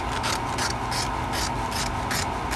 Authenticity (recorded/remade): recorded